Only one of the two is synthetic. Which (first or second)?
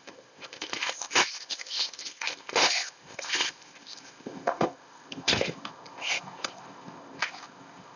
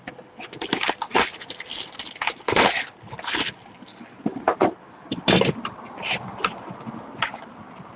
first